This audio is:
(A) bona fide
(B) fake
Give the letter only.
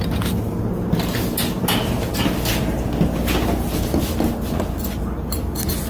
A